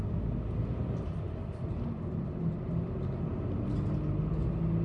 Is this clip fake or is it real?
real